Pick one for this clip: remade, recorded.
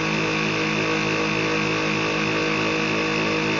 recorded